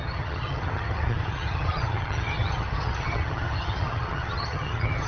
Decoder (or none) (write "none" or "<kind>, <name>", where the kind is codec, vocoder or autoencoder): vocoder, HiFi-GAN